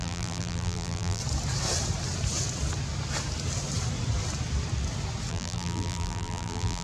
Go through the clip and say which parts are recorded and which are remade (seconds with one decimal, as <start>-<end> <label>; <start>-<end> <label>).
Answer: 0.0-1.2 remade; 1.2-5.3 recorded; 5.3-6.8 remade